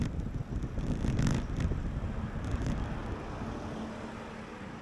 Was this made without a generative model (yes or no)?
yes